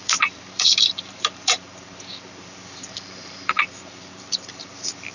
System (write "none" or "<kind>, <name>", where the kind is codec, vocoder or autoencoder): vocoder, BigVGAN v2